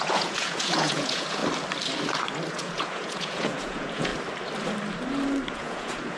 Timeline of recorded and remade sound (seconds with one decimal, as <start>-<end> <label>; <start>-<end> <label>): 0.0-1.4 remade; 1.4-2.5 recorded; 2.5-4.1 remade; 4.1-5.5 recorded; 5.5-6.2 remade